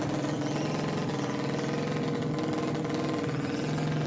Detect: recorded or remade recorded